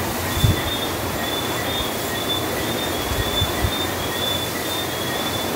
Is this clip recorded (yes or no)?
yes